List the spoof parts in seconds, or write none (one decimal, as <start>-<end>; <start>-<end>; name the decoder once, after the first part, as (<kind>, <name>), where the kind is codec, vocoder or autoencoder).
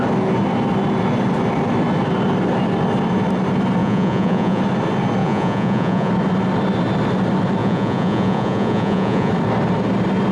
3.8-4.6 (vocoder, Vocos); 5.2-6.1; 7.6-9.3